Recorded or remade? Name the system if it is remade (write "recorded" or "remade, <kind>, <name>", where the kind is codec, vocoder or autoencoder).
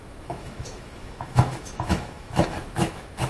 remade, autoencoder, DAC-VAE